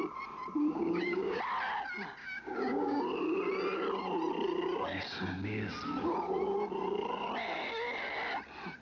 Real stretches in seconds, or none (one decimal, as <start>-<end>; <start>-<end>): 0.0-0.8; 1.4-2.2; 3.0-8.8